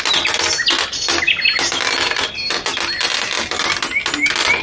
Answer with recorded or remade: recorded